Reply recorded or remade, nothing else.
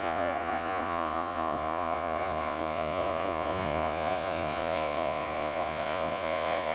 remade